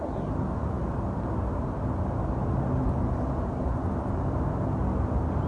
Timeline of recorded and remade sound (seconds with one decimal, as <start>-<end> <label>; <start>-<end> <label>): 0.0-5.5 recorded